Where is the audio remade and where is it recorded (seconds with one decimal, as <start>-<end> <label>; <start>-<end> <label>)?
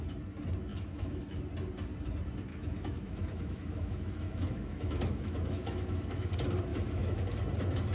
0.0-0.7 recorded; 0.7-1.4 remade; 1.4-2.5 recorded; 2.5-6.3 remade; 6.3-6.7 recorded; 6.7-7.2 remade; 7.2-7.9 recorded